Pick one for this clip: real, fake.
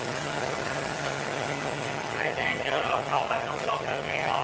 fake